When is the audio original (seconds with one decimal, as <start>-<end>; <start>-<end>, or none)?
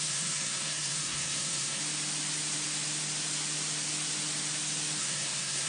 1.8-5.0